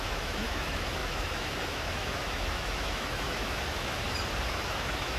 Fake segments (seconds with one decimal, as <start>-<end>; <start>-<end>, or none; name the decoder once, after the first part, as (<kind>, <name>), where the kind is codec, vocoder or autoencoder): 0.0-3.9 (autoencoder, DAC-VAE); 4.5-5.2